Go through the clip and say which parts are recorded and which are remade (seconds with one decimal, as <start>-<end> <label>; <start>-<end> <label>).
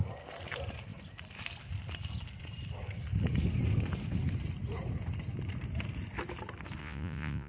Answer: 0.0-6.8 recorded; 6.8-7.5 remade